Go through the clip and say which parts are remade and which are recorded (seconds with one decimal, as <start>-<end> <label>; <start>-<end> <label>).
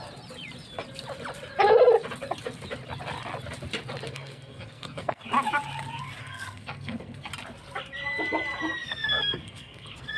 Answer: 0.0-4.1 recorded; 4.1-5.2 remade; 5.2-6.2 recorded; 6.2-7.3 remade; 7.3-8.8 recorded; 8.8-10.2 remade